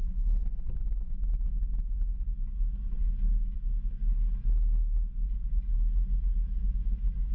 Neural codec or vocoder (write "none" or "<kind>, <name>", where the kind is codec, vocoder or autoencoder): none